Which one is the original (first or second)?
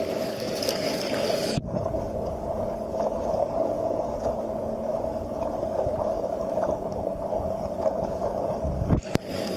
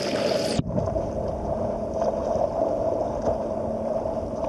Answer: second